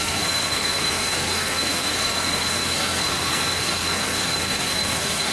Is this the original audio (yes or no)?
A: no